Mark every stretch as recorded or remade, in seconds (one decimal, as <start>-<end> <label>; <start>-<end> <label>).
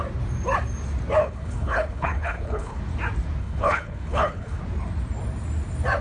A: 0.0-1.2 recorded; 1.2-2.8 remade; 2.8-3.4 recorded; 3.4-4.6 remade; 4.6-6.0 recorded